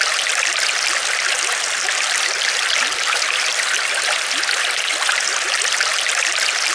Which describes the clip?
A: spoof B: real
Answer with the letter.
B